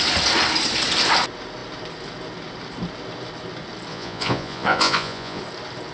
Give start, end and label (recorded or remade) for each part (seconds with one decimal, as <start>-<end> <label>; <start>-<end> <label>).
0.0-3.9 recorded; 3.9-5.4 remade; 5.4-5.9 recorded